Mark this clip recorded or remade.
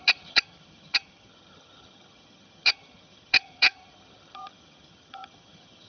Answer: remade